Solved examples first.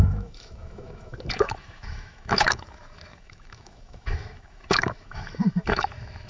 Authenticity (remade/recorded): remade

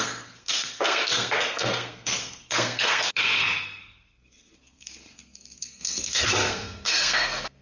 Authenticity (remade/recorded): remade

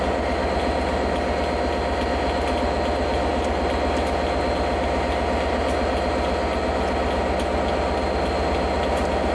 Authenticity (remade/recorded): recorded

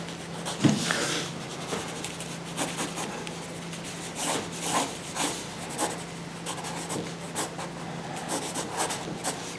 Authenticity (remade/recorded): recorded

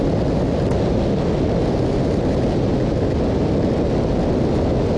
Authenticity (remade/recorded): recorded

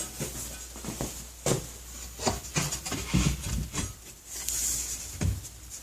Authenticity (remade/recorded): recorded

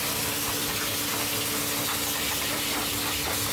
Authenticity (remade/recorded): recorded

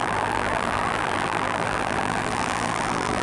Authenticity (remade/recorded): remade